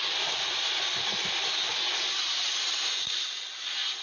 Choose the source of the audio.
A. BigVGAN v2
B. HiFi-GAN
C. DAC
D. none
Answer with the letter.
D